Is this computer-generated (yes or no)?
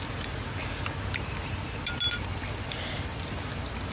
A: no